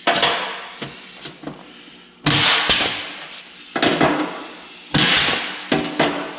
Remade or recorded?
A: recorded